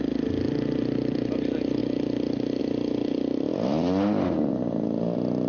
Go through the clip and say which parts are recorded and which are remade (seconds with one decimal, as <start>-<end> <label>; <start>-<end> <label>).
0.0-5.5 recorded